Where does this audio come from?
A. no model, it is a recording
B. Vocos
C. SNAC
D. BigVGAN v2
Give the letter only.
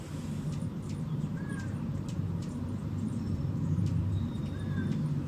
D